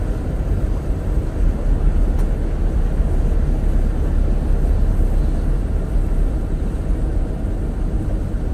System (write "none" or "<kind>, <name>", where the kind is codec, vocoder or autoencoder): none